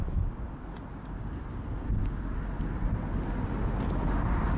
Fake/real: real